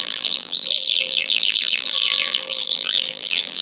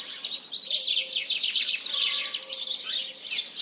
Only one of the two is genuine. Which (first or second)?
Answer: second